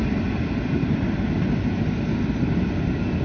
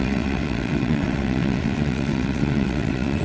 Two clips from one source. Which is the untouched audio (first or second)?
first